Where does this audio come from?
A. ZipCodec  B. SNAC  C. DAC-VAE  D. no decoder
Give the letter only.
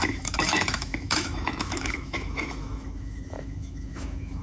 C